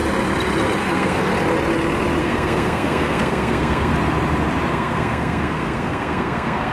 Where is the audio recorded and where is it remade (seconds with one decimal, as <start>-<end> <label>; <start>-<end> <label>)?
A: 0.0-0.8 recorded; 0.8-1.3 remade; 1.3-2.2 recorded; 2.2-3.9 remade; 3.9-4.7 recorded; 4.7-6.7 remade